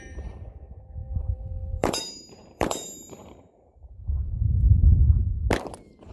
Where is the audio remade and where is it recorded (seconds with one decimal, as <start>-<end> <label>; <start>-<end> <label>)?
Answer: 0.0-5.2 remade; 5.2-6.1 recorded